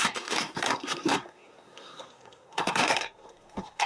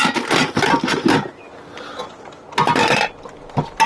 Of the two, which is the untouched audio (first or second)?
second